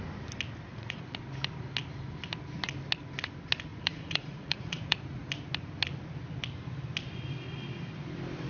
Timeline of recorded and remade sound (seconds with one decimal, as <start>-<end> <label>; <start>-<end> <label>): 0.0-0.7 recorded; 0.7-1.2 remade; 1.2-3.7 recorded; 3.7-5.3 remade; 5.3-8.5 recorded